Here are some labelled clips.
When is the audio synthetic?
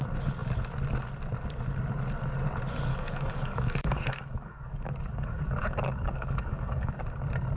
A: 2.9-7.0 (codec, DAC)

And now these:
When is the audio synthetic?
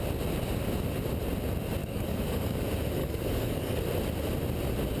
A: 1.8-2.6 (codec, DAC); 3.0-3.8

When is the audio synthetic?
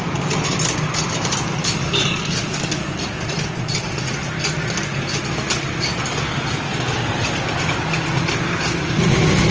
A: 1.6-2.9 (codec, DAC)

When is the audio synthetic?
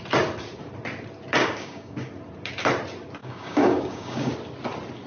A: 1.4-2.1 (codec, DAC); 3.2-4.3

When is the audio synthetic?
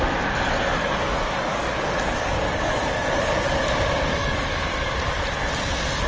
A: 0.8-3.6 (codec, DAC); 4.1-4.9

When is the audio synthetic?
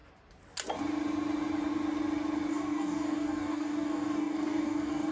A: 2.5-5.1 (codec, DAC)